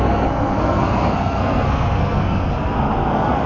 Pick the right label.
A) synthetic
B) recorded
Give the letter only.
A